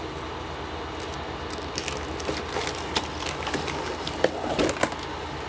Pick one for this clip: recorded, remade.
recorded